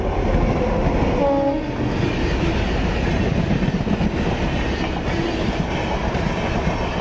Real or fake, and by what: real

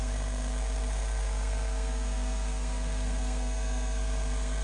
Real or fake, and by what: fake, codec, SNAC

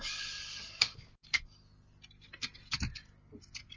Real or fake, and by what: real